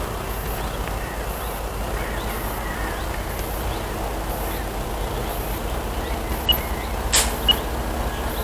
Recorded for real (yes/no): yes